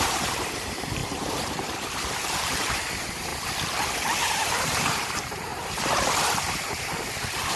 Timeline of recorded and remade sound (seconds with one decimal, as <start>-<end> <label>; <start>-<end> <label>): 0.0-3.3 remade; 3.3-4.2 recorded; 4.2-5.5 remade; 5.5-6.1 recorded; 6.1-7.6 remade